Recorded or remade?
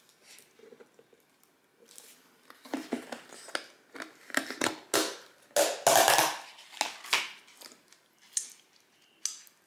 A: recorded